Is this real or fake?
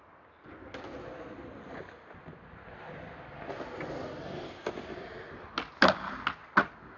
real